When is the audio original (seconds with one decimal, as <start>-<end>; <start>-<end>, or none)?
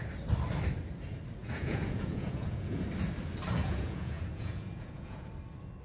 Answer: 0.0-1.4; 2.8-3.6; 5.3-5.8